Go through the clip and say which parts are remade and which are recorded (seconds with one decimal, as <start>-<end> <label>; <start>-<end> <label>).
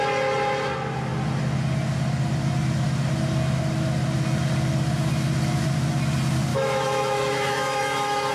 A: 0.0-6.5 recorded; 6.5-8.3 remade